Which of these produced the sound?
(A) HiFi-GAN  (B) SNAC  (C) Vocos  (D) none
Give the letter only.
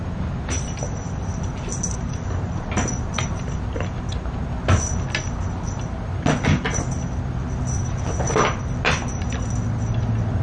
D